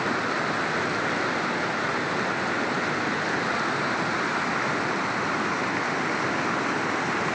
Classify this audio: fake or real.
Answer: real